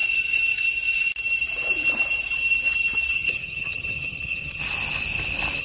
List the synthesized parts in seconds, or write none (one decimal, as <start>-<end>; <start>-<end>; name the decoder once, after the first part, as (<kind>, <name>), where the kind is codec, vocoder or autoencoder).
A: 3.1-4.6 (vocoder, HiFi-GAN)